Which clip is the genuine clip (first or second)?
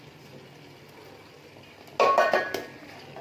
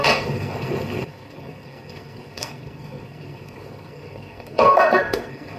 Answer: first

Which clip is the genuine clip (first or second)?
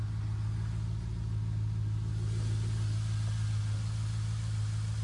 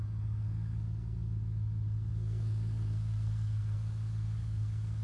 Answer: first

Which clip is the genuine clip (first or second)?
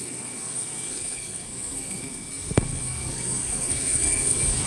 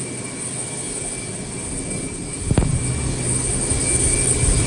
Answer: second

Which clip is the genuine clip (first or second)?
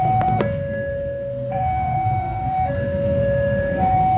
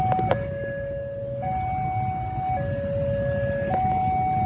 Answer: second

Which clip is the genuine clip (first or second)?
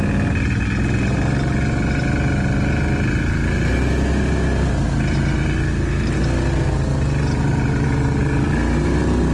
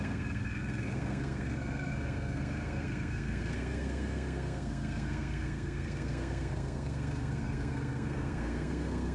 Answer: first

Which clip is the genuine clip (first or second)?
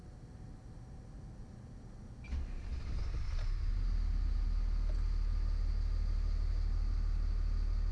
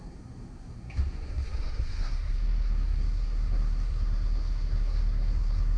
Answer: first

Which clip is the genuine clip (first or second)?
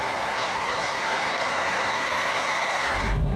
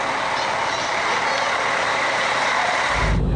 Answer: second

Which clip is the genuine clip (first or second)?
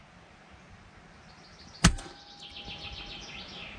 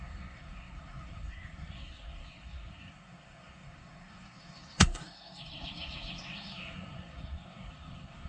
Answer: first